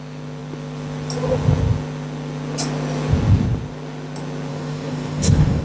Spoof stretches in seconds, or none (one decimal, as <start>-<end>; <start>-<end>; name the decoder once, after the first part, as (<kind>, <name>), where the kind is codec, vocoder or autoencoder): 4.5-5.6 (codec, DAC)